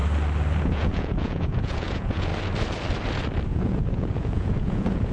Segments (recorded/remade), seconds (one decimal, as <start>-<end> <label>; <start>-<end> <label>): 0.0-0.6 recorded; 0.6-2.3 remade; 2.3-3.5 recorded; 3.5-5.1 remade